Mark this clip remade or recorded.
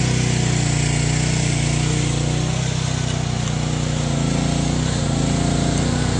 recorded